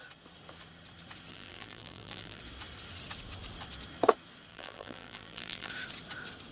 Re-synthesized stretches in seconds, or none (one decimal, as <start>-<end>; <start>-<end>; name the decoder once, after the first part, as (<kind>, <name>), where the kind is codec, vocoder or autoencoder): 1.3-2.4 (vocoder, BigVGAN v2); 4.5-5.7